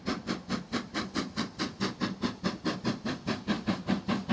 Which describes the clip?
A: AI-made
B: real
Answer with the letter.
B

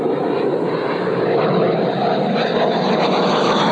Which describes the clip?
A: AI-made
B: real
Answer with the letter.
B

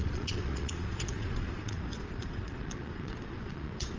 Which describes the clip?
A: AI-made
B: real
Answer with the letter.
A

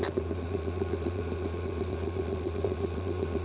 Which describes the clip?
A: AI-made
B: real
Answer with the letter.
A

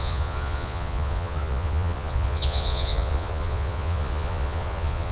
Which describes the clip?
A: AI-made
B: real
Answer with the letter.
A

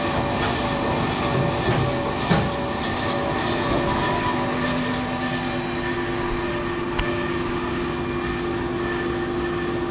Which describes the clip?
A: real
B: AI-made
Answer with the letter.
A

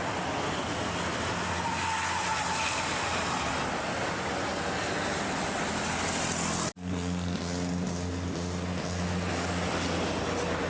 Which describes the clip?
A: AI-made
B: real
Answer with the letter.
B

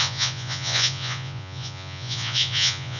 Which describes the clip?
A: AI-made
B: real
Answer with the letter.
A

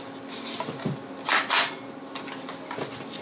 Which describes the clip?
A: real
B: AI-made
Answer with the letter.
A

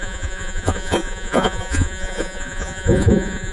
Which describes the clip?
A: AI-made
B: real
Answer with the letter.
A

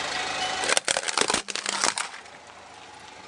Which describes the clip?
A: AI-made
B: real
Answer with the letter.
B